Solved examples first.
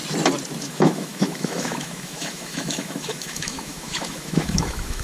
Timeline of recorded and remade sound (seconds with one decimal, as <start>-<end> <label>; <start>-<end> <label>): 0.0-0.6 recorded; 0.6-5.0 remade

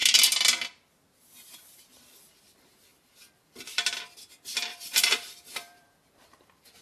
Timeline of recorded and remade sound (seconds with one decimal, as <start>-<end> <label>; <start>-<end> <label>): 0.0-2.9 recorded; 2.9-3.9 remade; 3.9-4.7 recorded; 4.7-6.8 remade

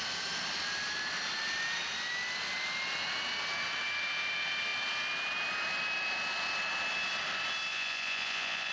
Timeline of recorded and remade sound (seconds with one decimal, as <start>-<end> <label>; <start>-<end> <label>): 0.0-7.7 recorded; 7.7-8.7 remade

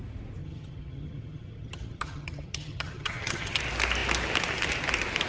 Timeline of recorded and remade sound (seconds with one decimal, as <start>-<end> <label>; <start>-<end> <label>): 0.0-0.4 recorded; 0.4-3.6 remade; 3.6-5.3 recorded